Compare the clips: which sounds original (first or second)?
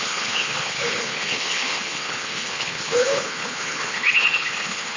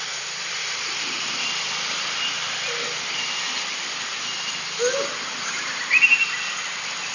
second